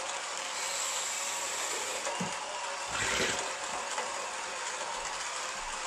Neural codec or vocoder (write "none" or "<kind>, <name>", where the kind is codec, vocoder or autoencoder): vocoder, BigVGAN v2